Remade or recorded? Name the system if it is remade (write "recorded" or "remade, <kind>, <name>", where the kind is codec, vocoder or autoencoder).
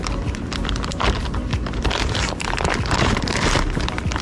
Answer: remade, vocoder, BigVGAN v2